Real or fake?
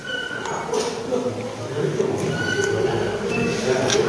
real